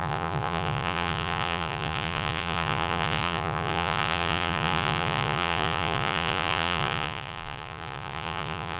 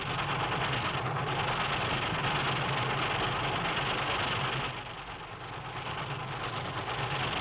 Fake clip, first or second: first